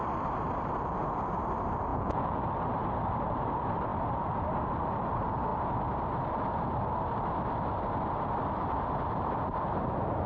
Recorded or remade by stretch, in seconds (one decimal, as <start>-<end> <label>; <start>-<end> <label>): 0.0-1.9 recorded; 1.9-2.4 remade; 2.4-10.3 recorded